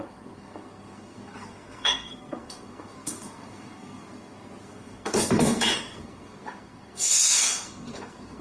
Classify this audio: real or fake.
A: fake